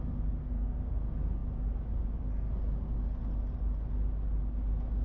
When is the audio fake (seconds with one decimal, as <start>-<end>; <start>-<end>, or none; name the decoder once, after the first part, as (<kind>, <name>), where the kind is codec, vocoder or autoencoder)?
0.4-0.9 (codec, SNAC)